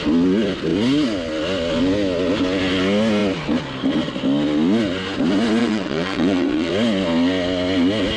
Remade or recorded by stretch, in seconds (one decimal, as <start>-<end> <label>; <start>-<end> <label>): 0.0-5.6 recorded; 5.6-6.7 remade; 6.7-8.2 recorded